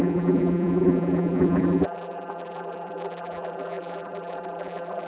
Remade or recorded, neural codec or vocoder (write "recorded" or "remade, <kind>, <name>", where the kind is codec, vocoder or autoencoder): remade, vocoder, BigVGAN v2